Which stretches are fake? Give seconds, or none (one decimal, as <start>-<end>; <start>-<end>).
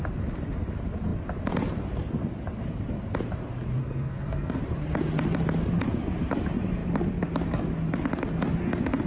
3.8-4.6